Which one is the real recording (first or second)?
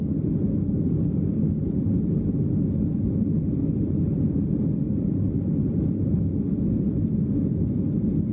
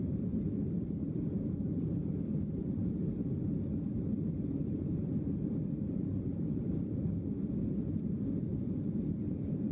first